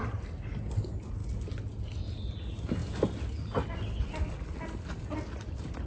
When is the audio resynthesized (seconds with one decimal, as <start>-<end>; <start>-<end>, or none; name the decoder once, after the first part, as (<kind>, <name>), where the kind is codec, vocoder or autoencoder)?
none